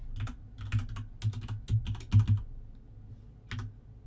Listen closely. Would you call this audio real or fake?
real